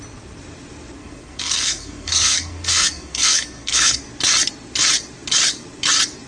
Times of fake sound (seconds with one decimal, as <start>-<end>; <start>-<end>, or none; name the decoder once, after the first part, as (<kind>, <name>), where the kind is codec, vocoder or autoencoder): 1.0-4.0 (codec, SNAC)